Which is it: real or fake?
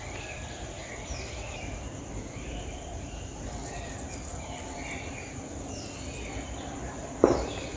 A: fake